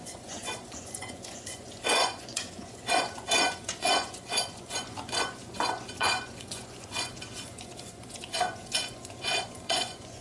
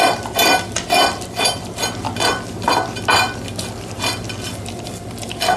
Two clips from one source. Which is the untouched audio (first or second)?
second